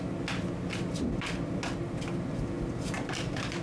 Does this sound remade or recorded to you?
recorded